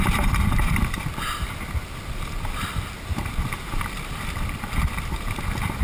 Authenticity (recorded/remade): recorded